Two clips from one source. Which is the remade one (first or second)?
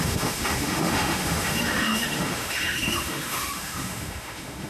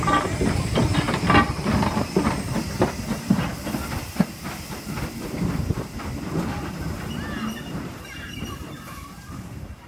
first